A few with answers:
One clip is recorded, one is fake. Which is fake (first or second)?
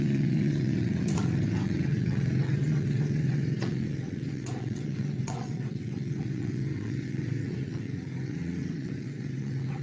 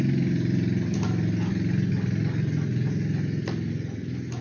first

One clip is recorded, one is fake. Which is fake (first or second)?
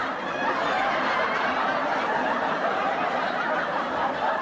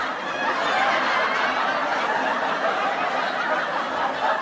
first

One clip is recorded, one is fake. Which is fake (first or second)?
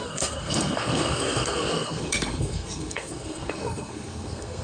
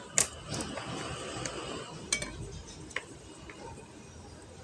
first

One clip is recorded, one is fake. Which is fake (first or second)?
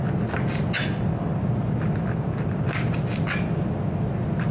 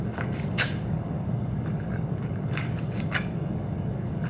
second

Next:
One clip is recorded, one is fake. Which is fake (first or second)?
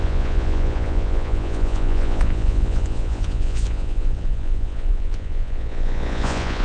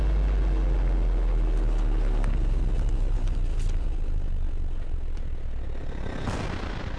first